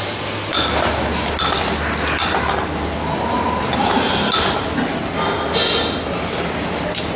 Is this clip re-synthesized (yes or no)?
no